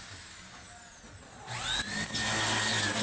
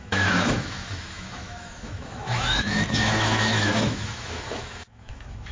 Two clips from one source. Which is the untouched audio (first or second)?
first